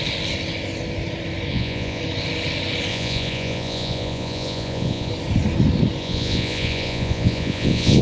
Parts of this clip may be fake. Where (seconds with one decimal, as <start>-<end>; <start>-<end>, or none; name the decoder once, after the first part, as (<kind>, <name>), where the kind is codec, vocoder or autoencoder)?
1.5-2.0 (vocoder, Vocos); 2.9-5.1; 6.0-8.0